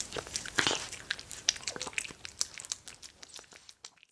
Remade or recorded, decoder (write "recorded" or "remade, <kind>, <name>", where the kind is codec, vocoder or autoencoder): recorded